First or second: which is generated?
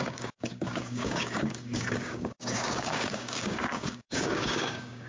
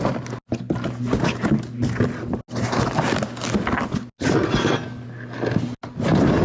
first